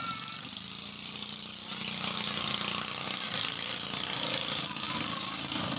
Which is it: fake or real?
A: real